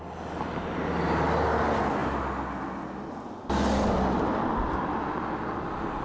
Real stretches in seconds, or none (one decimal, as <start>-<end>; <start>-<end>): 0.0-6.0